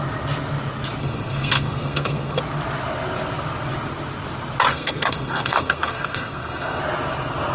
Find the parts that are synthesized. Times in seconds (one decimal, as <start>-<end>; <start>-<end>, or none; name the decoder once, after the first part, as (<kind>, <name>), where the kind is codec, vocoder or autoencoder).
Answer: 1.0-2.4 (codec, SNAC); 4.7-6.8